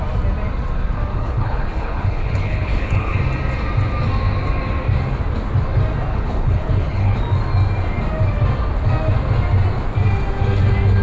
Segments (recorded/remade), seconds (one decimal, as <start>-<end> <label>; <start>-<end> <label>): 0.0-1.1 recorded; 1.1-3.2 remade; 3.2-6.1 recorded; 6.1-7.2 remade; 7.2-11.0 recorded